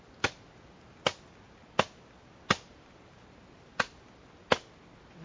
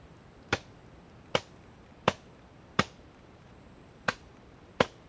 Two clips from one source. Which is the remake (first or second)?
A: second